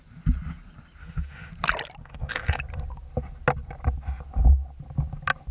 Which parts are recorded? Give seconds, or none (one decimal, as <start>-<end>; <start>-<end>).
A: 0.0-1.0; 1.5-2.0; 2.6-5.5

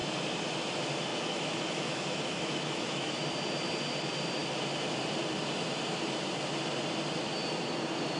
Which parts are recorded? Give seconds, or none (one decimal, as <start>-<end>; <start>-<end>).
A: 0.0-1.1; 3.2-8.2

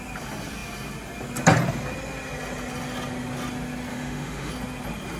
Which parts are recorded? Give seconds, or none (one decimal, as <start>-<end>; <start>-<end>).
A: 0.0-3.9; 4.5-5.2

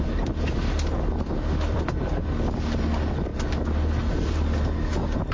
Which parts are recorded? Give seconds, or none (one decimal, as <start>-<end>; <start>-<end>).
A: 0.0-5.3

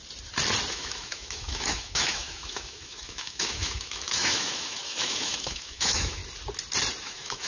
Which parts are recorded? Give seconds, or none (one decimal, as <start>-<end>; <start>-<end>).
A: 0.0-0.7; 6.2-7.0